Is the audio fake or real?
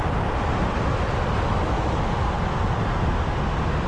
real